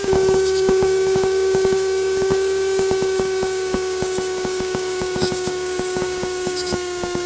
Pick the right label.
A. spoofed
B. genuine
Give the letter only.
A